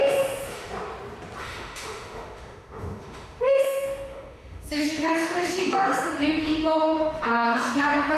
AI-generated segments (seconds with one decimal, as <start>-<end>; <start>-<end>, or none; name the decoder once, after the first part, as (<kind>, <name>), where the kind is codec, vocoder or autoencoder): 0.0-0.7 (autoencoder, DAC-VAE); 1.4-8.2